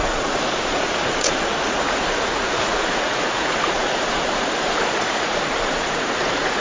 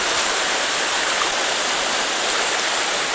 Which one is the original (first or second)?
second